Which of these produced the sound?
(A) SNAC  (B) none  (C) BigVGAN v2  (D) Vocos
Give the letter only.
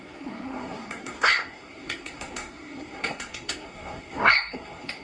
A